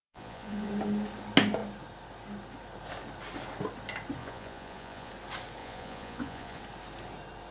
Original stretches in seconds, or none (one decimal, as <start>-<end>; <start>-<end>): 0.7-4.2; 5.1-5.6; 6.6-7.5